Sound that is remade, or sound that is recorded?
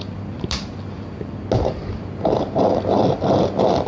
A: recorded